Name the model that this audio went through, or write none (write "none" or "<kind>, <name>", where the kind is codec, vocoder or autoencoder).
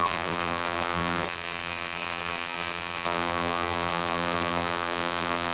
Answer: vocoder, BigVGAN v2